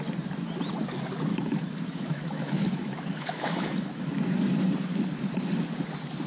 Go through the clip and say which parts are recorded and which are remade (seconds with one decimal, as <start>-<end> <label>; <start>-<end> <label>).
0.0-1.3 recorded; 1.3-4.0 remade; 4.0-6.3 recorded